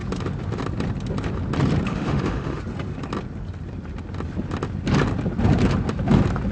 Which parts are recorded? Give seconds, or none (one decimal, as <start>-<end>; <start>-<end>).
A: 0.0-1.9; 2.6-6.5